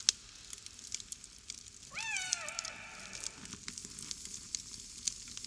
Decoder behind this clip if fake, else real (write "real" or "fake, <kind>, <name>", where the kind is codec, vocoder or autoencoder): real